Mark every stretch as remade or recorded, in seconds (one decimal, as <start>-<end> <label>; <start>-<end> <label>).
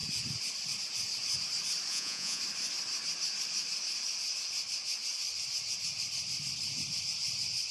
0.0-1.9 recorded; 1.9-2.4 remade; 2.4-7.7 recorded